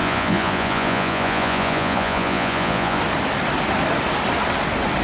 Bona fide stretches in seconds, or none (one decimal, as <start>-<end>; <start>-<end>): 3.0-5.0